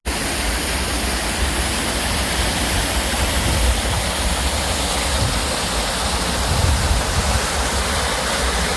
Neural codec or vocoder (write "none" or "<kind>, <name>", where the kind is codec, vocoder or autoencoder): none